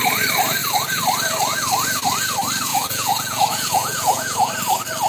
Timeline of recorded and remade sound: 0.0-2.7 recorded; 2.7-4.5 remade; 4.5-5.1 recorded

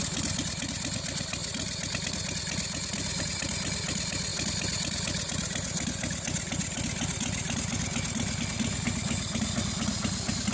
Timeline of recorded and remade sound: 0.0-10.5 recorded

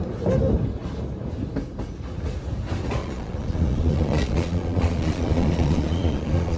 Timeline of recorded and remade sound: 0.0-3.0 recorded; 3.0-6.6 remade